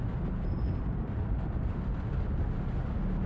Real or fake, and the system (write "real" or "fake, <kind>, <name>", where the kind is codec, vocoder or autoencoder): real